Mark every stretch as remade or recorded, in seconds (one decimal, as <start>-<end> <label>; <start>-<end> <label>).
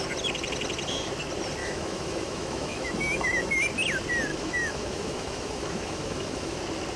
0.0-1.6 recorded; 1.6-3.6 remade; 3.6-4.3 recorded; 4.3-6.6 remade; 6.6-7.0 recorded